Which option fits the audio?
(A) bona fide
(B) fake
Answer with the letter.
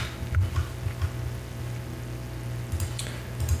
A